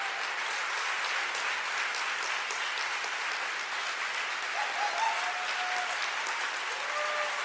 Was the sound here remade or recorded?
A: recorded